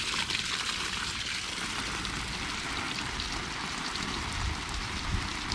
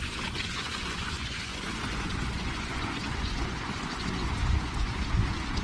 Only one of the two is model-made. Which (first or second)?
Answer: second